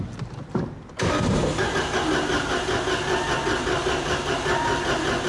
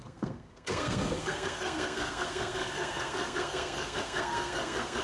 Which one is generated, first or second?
second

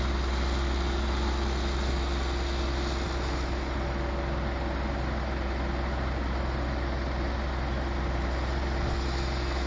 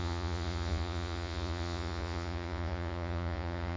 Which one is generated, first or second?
second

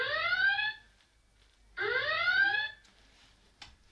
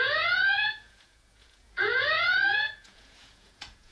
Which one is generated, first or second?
second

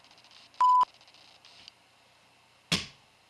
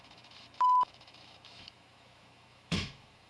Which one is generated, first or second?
second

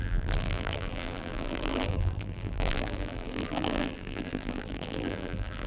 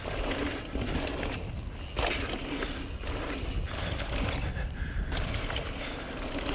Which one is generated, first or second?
first